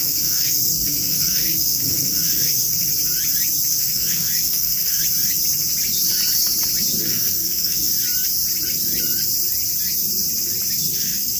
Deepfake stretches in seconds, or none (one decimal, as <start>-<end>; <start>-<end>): 0.0-2.9; 3.7-5.0; 7.0-7.9; 10.9-11.4

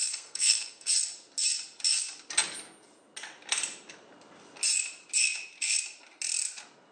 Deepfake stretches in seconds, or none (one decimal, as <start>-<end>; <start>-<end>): 0.0-0.9